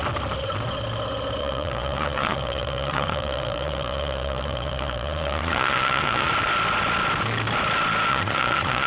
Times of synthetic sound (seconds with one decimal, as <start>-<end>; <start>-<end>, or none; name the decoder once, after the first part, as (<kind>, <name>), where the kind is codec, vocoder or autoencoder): 1.4-6.3 (vocoder, Vocos); 8.1-8.9